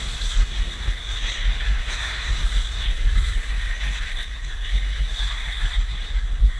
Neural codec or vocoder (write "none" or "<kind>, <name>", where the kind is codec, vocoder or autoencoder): codec, SNAC